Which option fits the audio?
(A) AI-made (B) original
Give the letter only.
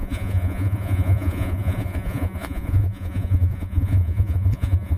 A